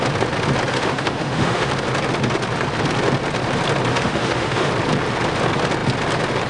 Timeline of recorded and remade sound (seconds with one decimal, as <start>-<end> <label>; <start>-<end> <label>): 0.0-0.7 recorded; 0.7-1.7 remade; 1.7-3.9 recorded; 3.9-4.7 remade; 4.7-6.5 recorded